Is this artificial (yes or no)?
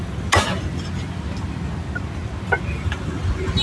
no